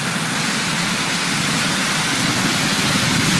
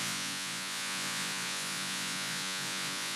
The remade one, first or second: second